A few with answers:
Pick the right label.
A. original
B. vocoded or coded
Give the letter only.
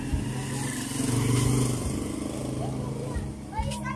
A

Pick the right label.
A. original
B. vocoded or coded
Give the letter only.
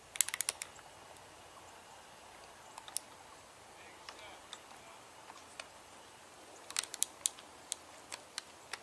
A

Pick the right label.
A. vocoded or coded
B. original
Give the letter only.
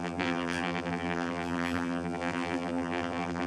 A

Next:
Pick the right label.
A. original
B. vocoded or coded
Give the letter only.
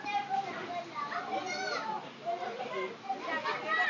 A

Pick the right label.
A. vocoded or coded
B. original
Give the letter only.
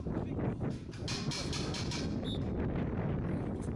B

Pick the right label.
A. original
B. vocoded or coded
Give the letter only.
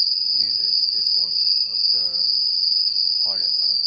A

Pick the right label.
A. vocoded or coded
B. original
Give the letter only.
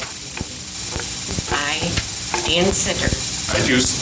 B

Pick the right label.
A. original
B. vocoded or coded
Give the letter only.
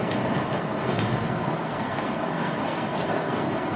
B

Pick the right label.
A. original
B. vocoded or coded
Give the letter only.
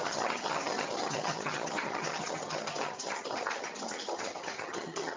B